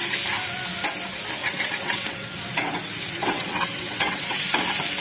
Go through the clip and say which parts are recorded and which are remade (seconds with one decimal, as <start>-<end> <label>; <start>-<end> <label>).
0.0-1.4 recorded; 1.4-4.4 remade; 4.4-5.0 recorded